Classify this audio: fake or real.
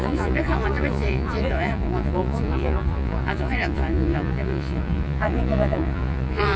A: fake